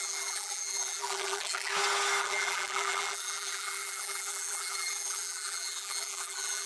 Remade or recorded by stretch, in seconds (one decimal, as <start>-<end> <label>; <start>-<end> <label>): 0.0-1.7 remade; 1.7-2.2 recorded; 2.2-6.7 remade

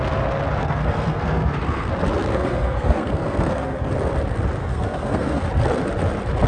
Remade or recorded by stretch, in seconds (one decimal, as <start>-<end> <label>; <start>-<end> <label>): 0.0-0.6 recorded; 0.6-1.9 remade; 1.9-2.3 recorded; 2.3-3.9 remade; 3.9-4.6 recorded; 4.6-5.4 remade; 5.4-6.5 recorded

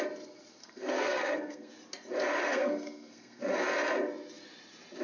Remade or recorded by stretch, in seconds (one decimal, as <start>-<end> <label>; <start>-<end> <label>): 0.0-0.6 recorded; 0.6-1.7 remade; 1.7-2.5 recorded; 2.5-3.4 remade; 3.4-5.0 recorded